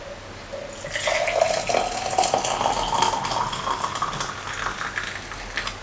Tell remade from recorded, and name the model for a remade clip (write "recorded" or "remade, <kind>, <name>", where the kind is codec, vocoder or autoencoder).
recorded